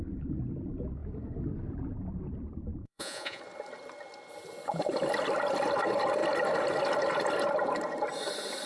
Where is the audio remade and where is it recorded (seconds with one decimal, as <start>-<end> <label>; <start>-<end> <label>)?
0.0-2.8 recorded; 2.8-3.4 remade; 3.4-8.7 recorded